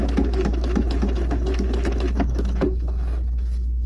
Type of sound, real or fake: fake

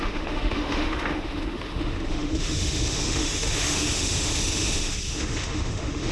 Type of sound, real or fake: fake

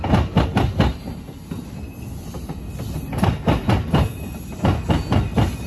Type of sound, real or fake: real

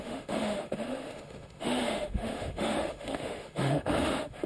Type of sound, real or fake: fake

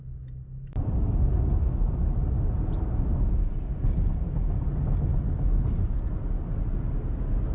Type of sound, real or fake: real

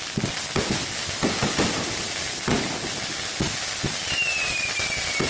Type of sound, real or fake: real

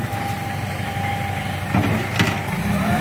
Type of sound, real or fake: real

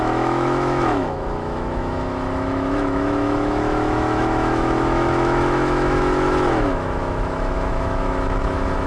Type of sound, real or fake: fake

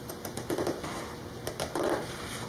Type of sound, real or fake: real